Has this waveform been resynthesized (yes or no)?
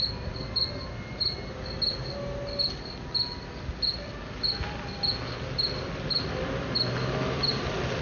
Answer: no